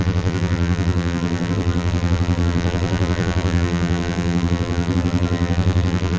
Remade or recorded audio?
remade